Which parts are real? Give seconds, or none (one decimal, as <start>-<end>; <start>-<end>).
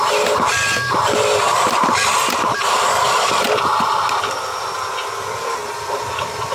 0.0-1.5; 4.6-6.5